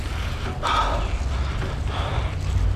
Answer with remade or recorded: recorded